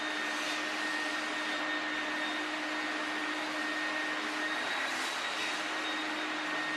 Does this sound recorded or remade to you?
recorded